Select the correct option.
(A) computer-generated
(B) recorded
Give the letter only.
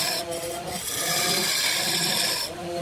B